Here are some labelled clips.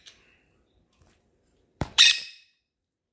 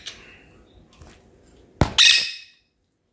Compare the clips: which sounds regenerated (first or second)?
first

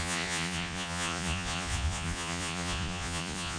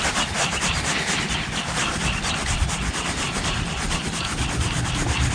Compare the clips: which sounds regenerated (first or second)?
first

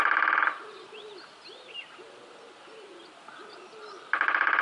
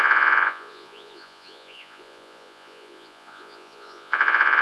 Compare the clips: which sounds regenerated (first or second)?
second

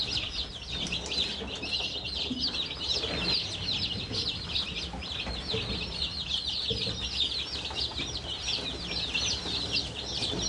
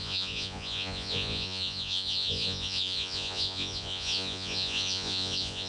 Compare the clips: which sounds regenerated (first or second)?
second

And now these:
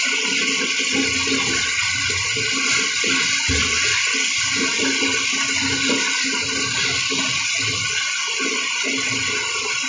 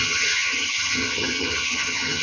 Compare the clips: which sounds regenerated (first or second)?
second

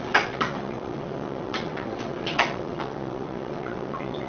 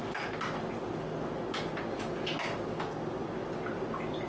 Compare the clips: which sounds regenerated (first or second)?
first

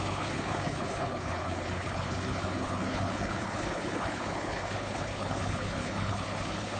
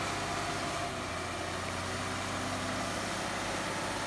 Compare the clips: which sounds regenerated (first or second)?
first